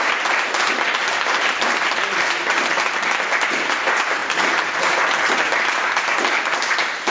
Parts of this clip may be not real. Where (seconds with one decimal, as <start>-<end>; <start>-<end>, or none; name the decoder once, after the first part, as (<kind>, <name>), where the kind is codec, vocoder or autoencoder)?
none